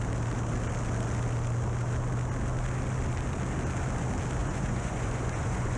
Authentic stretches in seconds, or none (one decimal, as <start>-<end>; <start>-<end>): 0.0-4.4